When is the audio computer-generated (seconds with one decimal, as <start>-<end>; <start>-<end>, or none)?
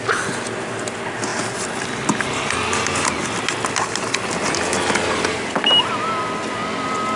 none